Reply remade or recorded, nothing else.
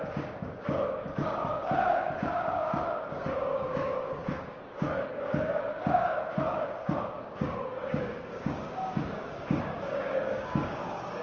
remade